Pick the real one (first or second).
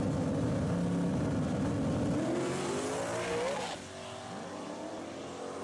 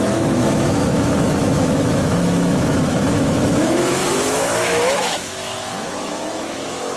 first